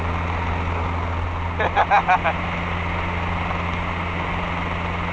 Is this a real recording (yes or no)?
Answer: yes